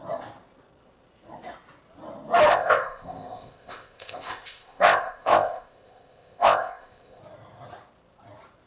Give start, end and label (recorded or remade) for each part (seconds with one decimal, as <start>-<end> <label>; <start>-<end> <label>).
0.0-2.5 recorded; 2.5-7.2 remade; 7.2-8.7 recorded